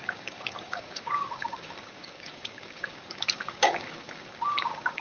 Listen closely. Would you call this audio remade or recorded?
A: remade